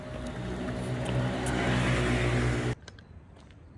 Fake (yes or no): no